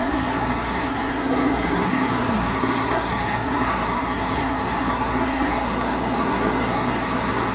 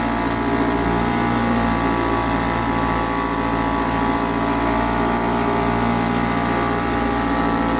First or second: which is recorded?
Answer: second